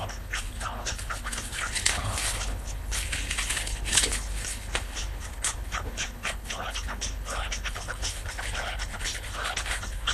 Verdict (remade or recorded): remade